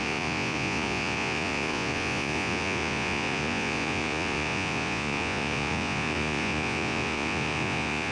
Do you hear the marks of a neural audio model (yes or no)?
yes